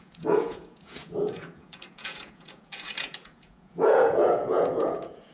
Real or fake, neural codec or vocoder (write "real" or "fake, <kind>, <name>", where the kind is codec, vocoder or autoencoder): fake, vocoder, Vocos